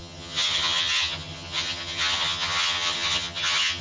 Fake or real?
fake